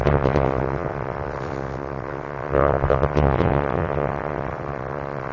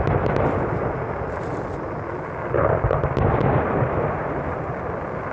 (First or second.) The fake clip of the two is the first